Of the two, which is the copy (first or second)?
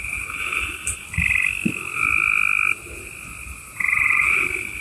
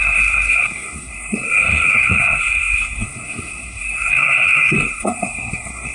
second